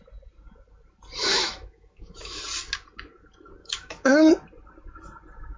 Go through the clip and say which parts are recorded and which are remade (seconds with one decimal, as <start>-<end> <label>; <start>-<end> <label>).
0.0-1.2 recorded; 1.2-2.4 remade; 2.4-3.6 recorded; 3.6-4.3 remade; 4.3-5.6 recorded